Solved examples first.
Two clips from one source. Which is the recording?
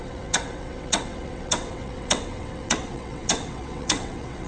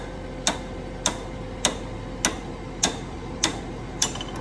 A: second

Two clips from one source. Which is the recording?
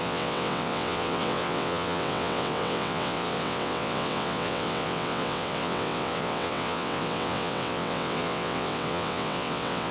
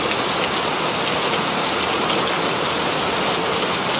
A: second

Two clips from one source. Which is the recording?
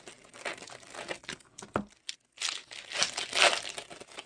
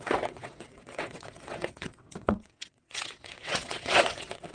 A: first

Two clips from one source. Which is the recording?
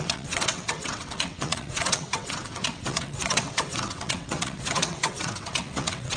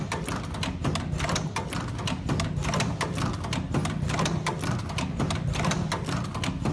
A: second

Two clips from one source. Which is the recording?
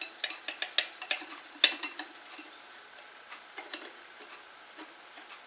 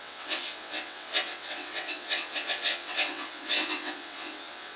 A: first